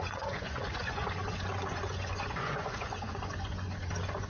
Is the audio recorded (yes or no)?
no